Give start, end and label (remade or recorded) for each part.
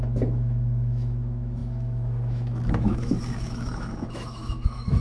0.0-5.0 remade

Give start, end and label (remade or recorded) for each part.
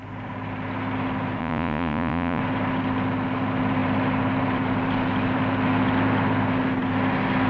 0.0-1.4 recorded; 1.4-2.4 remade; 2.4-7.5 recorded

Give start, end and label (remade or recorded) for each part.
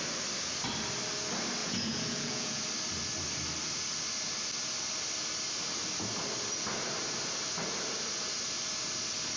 0.0-1.6 recorded; 1.6-2.6 remade; 2.6-9.4 recorded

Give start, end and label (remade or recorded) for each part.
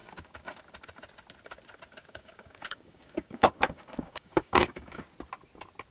0.0-0.6 remade; 0.6-2.0 recorded; 2.0-5.0 remade; 5.0-5.9 recorded